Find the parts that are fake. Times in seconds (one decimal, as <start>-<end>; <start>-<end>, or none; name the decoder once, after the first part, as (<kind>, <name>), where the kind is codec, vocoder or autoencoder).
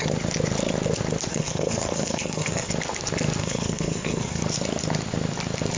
1.3-2.7 (codec, SNAC); 3.4-4.4